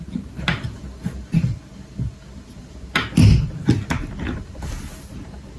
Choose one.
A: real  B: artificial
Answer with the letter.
A